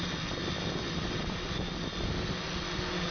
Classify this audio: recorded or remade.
recorded